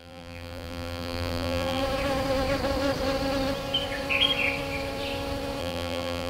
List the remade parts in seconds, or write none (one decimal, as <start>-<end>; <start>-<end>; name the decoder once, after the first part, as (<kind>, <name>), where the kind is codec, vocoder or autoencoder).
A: 0.0-1.8 (vocoder, BigVGAN v2); 5.6-6.3